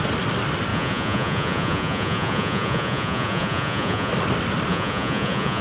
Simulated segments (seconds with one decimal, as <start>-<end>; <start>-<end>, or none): 0.7-4.1; 4.7-5.6